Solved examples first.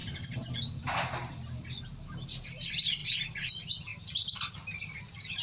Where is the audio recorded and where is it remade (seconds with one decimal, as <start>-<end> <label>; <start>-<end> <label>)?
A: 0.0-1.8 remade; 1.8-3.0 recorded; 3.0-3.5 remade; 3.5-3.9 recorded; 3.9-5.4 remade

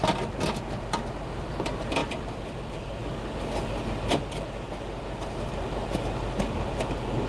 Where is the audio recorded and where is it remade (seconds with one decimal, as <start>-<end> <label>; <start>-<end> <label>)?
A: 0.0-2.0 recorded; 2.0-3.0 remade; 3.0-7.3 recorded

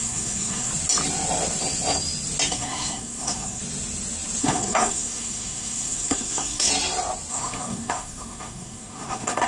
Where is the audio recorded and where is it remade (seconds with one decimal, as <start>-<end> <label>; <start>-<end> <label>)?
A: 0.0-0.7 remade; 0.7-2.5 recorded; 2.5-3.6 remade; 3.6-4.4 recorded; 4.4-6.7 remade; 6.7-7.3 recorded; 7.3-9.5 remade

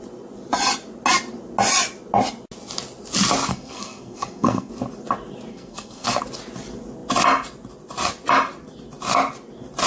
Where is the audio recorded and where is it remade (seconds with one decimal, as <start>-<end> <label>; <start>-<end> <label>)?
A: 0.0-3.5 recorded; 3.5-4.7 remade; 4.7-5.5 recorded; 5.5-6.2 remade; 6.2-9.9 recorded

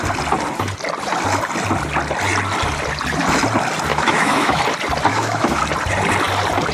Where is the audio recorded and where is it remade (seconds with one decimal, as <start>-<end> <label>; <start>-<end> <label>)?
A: 0.0-3.9 recorded; 3.9-4.6 remade; 4.6-5.1 recorded; 5.1-5.6 remade; 5.6-6.7 recorded

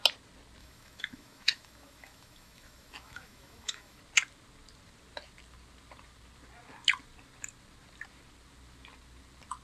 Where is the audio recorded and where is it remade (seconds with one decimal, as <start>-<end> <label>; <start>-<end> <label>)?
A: 0.0-0.6 recorded; 0.6-4.0 remade; 4.0-9.6 recorded